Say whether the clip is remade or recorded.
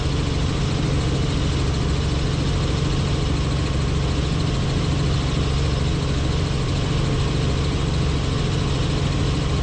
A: recorded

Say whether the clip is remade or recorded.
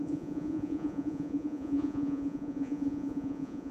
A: remade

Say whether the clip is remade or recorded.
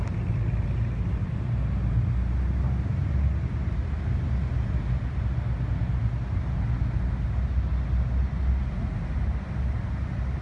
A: recorded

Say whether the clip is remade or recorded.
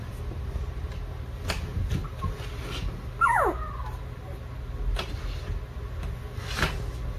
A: recorded